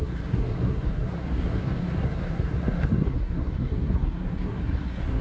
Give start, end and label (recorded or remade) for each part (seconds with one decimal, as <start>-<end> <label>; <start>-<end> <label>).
0.0-5.2 remade